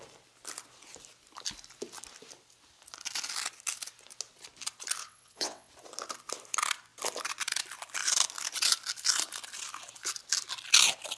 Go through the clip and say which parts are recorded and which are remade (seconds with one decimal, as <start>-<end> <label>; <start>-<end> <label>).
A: 0.0-5.0 recorded; 5.0-5.7 remade; 5.7-11.2 recorded